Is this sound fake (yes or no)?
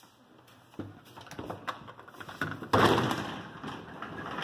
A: no